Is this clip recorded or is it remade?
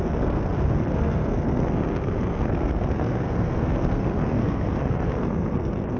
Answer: remade